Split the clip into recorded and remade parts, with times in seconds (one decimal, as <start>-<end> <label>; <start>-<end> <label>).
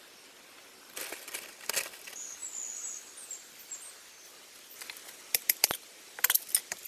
0.0-6.9 recorded